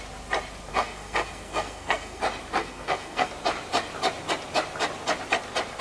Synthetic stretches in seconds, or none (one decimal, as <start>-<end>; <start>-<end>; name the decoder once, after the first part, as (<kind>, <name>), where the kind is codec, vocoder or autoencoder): 0.7-2.2 (codec, SNAC); 2.6-3.3